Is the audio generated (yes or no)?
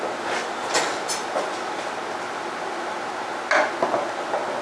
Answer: no